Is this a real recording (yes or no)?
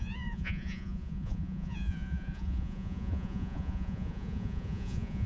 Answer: no